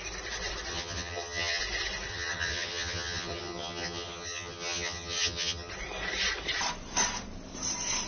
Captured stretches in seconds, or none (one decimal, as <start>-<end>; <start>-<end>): 0.0-0.7; 1.6-2.1; 5.7-8.1